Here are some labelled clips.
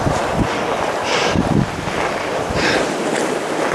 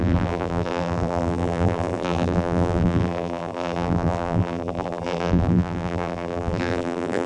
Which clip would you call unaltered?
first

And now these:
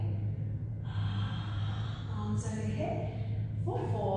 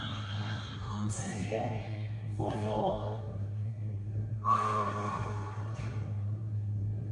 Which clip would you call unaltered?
first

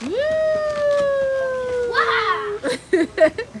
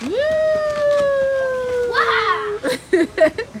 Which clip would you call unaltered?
first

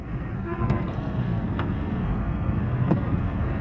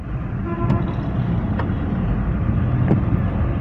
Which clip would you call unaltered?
second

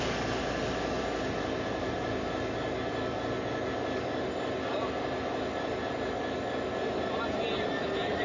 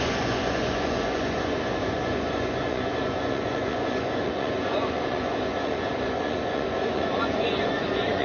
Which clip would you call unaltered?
first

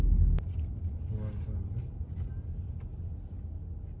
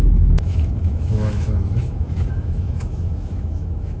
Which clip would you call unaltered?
first